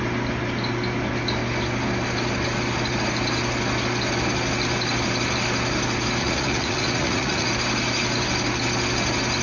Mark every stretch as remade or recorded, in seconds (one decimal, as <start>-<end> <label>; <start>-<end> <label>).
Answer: 0.0-6.2 recorded; 6.2-7.5 remade; 7.5-9.4 recorded